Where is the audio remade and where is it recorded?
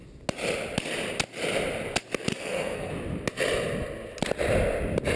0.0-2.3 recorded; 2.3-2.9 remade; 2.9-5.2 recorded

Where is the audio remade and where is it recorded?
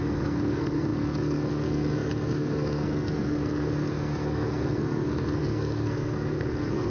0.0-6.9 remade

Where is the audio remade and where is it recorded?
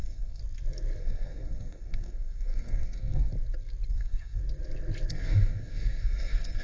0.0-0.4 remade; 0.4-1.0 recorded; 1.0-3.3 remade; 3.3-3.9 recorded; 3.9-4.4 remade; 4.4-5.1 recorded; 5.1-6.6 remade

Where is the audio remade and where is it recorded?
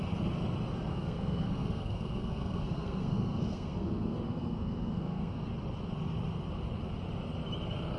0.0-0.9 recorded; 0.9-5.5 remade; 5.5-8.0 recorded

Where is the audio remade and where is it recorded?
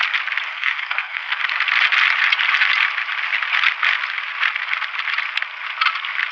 0.0-0.5 recorded; 0.5-1.4 remade; 1.4-6.3 recorded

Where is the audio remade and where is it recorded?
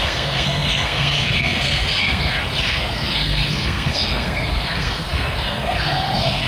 0.0-6.5 remade